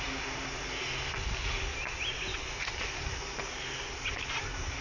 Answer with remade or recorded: recorded